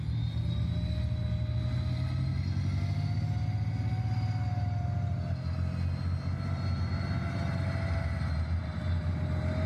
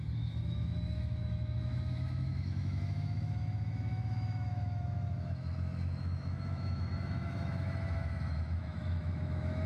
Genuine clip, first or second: first